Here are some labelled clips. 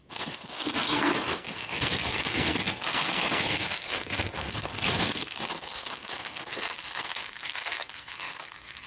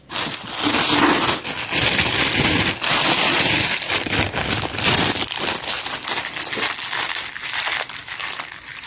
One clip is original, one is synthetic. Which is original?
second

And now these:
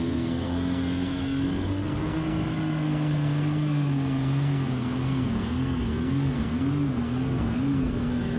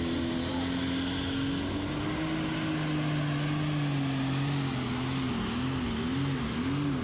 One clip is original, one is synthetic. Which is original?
second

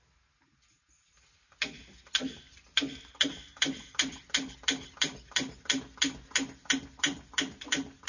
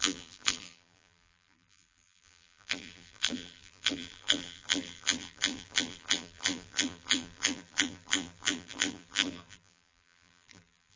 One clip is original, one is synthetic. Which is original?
first